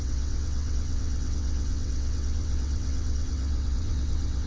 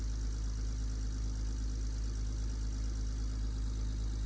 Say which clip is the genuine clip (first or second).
second